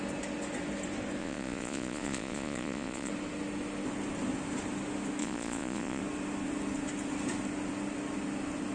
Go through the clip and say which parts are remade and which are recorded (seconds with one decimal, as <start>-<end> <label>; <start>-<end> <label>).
0.0-1.2 recorded; 1.2-3.1 remade; 3.1-5.2 recorded; 5.2-6.0 remade; 6.0-8.7 recorded